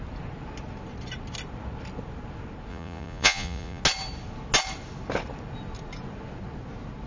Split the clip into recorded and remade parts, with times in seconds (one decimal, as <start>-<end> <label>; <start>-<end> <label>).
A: 0.0-2.7 recorded; 2.7-3.8 remade; 3.8-7.1 recorded